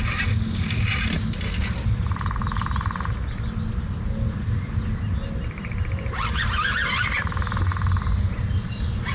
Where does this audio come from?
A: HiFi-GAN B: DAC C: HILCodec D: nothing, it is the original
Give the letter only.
D